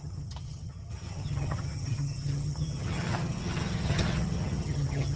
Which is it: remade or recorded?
remade